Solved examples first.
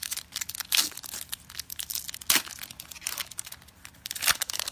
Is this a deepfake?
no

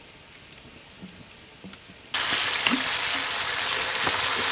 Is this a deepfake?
no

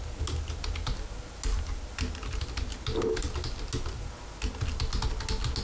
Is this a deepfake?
no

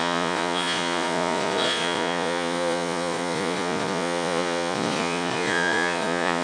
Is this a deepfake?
yes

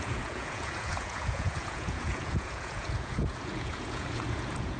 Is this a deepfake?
yes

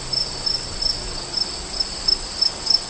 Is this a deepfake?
no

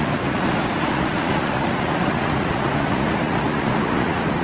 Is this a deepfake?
yes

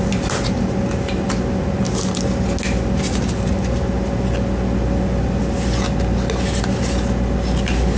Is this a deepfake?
no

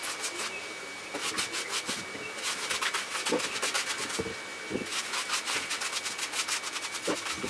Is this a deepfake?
no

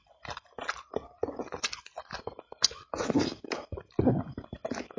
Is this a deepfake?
no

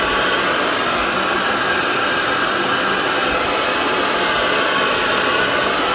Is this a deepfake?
no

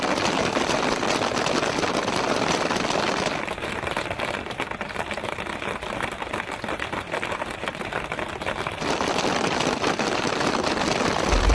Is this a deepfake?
no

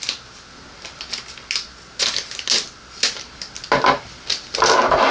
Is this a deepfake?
no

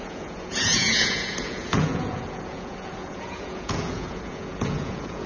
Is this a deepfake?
yes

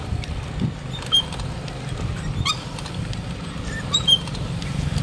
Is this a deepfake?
no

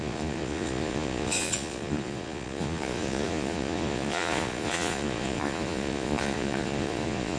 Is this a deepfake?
yes